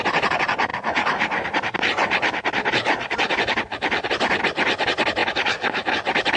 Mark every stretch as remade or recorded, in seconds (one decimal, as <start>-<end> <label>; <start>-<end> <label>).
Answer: 0.0-0.7 remade; 0.7-4.4 recorded; 4.4-5.2 remade; 5.2-5.9 recorded; 5.9-6.4 remade